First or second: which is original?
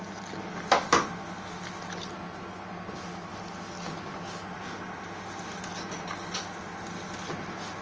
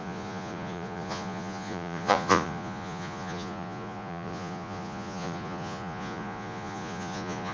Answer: first